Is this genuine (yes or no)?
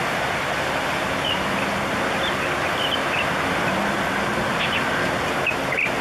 yes